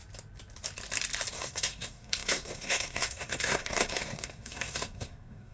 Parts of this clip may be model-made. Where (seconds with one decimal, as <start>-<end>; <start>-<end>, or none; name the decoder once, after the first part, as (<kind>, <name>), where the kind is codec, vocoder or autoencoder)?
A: 1.3-5.5 (codec, SNAC)